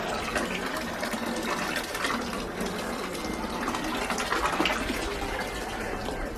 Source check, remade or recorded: recorded